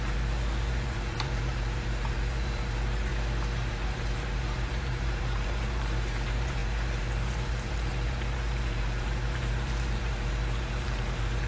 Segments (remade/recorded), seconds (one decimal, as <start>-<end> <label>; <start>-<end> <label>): 0.0-3.1 remade; 3.1-3.7 recorded; 3.7-11.5 remade